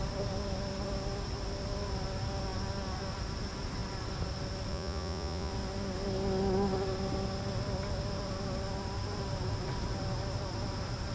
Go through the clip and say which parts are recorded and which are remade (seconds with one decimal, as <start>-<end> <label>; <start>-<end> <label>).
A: 0.0-4.7 recorded; 4.7-5.5 remade; 5.5-11.1 recorded